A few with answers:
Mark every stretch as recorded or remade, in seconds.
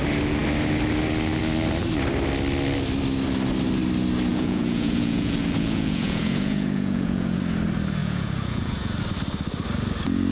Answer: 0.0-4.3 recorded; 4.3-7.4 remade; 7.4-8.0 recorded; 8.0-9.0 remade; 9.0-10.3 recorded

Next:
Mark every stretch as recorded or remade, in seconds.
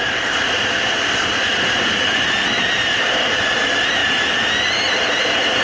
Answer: 0.0-1.3 recorded; 1.3-2.4 remade; 2.4-4.0 recorded; 4.0-4.5 remade; 4.5-5.6 recorded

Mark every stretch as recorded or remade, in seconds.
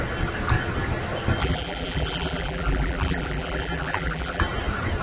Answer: 0.0-1.4 recorded; 1.4-4.4 remade; 4.4-5.0 recorded